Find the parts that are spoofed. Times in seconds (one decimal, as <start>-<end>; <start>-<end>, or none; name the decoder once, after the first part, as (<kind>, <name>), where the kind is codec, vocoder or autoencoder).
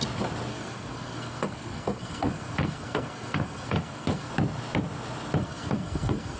0.5-4.3 (codec, SNAC); 5.4-6.4